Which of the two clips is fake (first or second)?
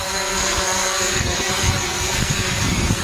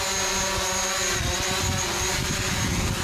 first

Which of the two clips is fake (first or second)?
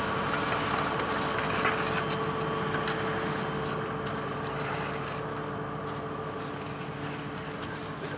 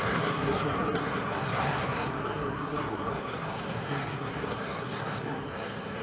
second